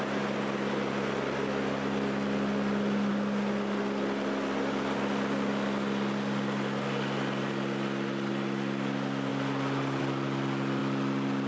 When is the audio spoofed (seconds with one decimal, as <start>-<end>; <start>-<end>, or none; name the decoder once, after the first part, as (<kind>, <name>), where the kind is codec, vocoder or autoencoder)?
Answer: none